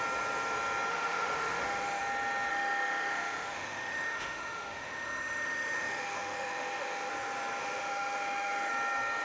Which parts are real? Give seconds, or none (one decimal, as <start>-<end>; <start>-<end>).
0.0-0.9; 2.0-2.5; 7.1-7.6; 8.7-9.2